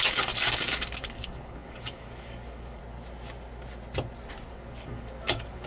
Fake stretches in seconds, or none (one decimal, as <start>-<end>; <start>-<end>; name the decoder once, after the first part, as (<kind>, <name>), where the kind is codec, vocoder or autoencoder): 0.0-2.8 (codec, DAC); 4.5-5.7